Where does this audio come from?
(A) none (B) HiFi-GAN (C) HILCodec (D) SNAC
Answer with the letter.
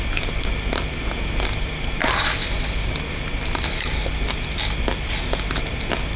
A